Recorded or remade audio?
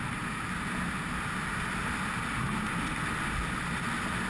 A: recorded